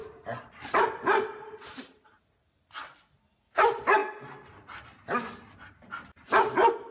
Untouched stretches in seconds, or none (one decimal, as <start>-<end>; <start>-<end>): 2.7-6.9